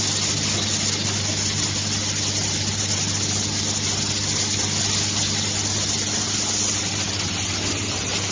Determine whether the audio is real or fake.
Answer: real